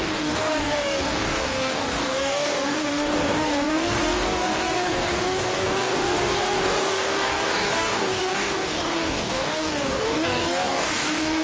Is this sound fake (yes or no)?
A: yes